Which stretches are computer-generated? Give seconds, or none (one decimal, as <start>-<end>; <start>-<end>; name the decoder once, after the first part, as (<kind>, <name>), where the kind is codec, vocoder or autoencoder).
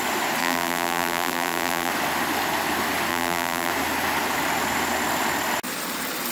0.4-1.9 (vocoder, BigVGAN v2); 3.1-3.7